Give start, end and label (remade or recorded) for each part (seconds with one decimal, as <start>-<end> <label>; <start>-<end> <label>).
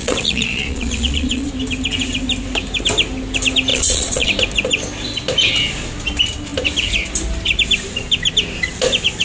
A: 0.0-1.5 remade; 1.5-3.7 recorded; 3.7-4.3 remade; 4.3-9.2 recorded